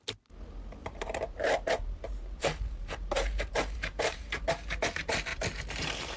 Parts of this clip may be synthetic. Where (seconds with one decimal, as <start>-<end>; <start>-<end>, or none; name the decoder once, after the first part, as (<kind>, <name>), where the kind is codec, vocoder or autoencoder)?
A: 0.8-4.5 (vocoder, BigVGAN v2); 5.3-6.2